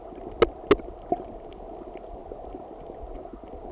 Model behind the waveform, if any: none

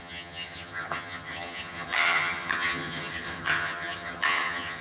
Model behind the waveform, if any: vocoder, HiFi-GAN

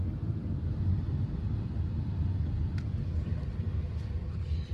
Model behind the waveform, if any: none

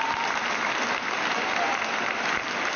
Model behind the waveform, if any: none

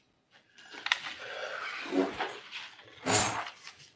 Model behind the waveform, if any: none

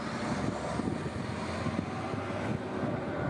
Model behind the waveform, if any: none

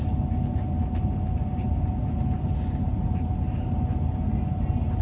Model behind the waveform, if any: none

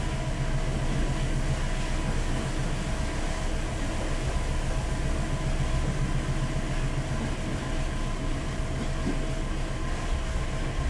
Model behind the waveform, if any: none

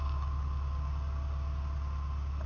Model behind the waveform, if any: none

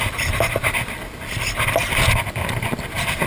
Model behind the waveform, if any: none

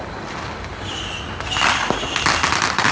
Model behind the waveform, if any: none